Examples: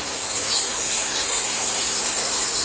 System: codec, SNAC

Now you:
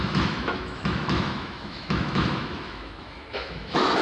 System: autoencoder, DAC-VAE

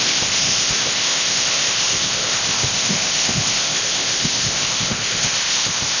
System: codec, ZipCodec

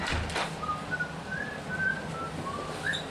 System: none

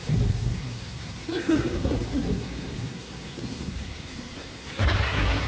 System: codec, SNAC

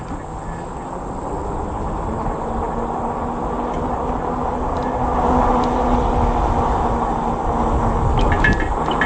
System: none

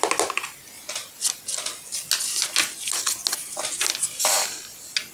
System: none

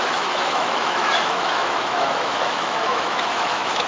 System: autoencoder, DAC-VAE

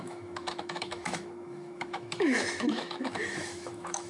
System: autoencoder, DAC-VAE